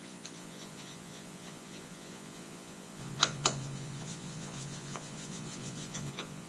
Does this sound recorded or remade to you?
remade